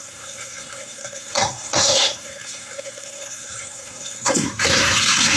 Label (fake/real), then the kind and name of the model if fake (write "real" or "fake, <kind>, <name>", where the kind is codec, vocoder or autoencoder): fake, codec, SNAC